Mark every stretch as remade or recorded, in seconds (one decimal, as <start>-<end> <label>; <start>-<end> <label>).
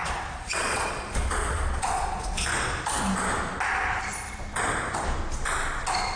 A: 0.0-2.5 remade; 2.5-6.2 recorded